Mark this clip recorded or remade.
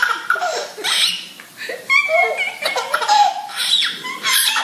remade